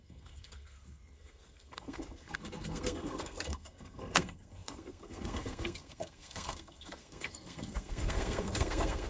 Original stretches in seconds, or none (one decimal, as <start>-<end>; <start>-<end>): none